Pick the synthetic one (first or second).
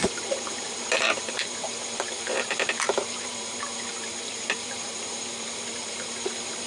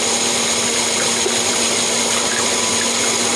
first